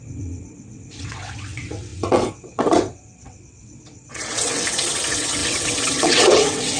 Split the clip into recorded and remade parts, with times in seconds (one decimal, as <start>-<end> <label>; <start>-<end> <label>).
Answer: 0.0-6.8 remade